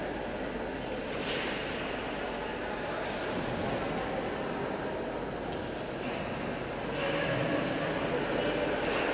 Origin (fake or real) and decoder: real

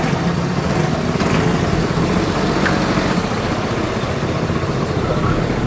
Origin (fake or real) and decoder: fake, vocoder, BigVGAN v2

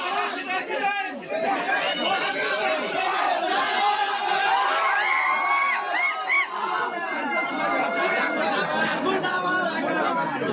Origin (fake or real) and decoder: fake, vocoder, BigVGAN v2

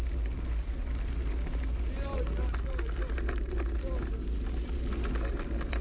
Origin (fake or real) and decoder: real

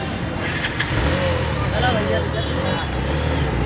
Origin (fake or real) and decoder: real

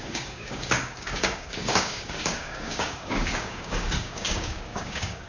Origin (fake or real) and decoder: fake, codec, DAC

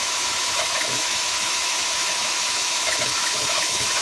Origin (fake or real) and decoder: fake, autoencoder, DAC-VAE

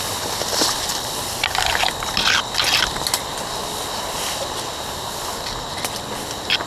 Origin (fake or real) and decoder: real